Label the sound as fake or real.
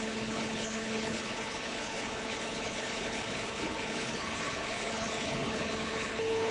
fake